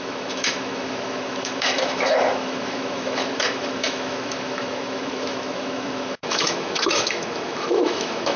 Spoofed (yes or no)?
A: yes